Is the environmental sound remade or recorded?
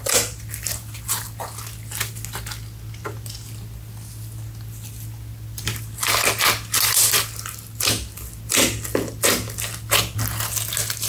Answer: recorded